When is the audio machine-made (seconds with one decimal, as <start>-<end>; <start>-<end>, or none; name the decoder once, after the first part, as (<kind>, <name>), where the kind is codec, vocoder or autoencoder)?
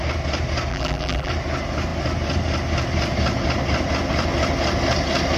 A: 0.7-1.3 (vocoder, BigVGAN v2)